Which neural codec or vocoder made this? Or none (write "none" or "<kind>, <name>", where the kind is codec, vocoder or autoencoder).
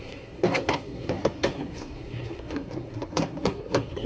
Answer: codec, SNAC